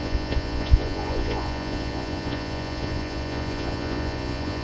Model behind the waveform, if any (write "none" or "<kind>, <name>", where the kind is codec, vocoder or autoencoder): vocoder, Vocos